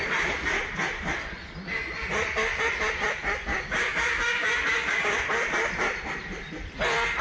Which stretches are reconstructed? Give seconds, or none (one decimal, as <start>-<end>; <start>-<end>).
3.5-5.2